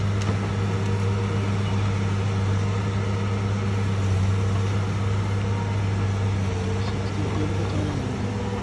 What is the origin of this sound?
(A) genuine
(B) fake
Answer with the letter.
A